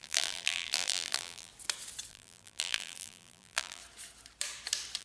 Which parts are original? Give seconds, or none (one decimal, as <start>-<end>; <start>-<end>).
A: 1.5-2.1; 3.8-5.0